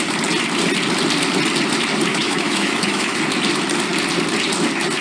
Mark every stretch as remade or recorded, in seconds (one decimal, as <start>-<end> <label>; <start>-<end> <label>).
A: 0.0-2.1 recorded; 2.1-3.2 remade; 3.2-5.0 recorded